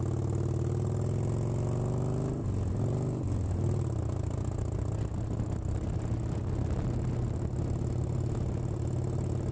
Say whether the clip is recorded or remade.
recorded